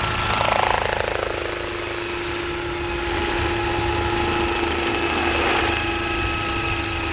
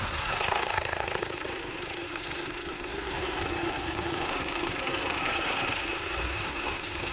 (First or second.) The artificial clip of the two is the second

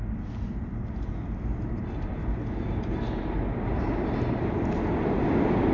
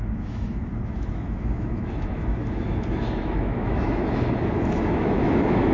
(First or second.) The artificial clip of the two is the second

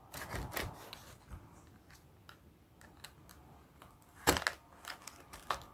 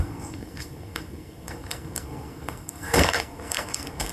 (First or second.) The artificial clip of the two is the second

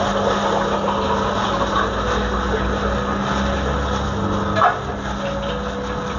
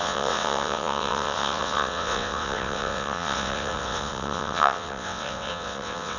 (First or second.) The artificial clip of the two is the second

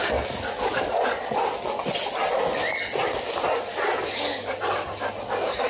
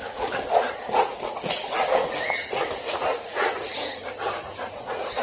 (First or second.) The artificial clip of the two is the second